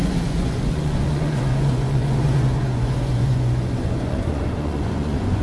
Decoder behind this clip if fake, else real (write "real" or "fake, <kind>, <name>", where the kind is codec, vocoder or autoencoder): fake, vocoder, Vocos